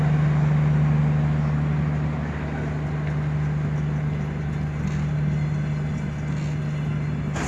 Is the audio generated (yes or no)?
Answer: no